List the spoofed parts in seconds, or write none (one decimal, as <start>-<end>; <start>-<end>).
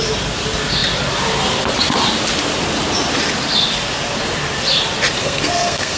5.2-6.0